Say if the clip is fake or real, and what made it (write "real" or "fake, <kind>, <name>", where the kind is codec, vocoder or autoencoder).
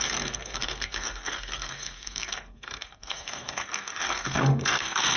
fake, codec, SNAC